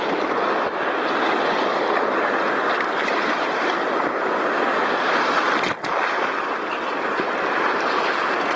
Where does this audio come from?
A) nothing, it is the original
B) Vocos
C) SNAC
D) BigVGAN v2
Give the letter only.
A